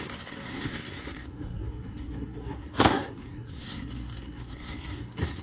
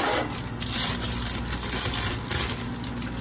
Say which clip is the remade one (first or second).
first